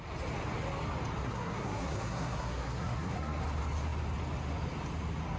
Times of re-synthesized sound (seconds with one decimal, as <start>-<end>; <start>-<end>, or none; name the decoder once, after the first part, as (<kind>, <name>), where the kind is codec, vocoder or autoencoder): 1.2-3.4 (codec, SNAC)